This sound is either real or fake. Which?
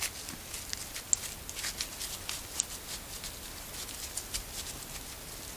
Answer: real